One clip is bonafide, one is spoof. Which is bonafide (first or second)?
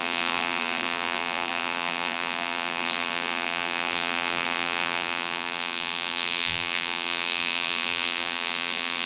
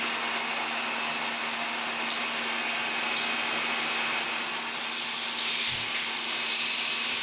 second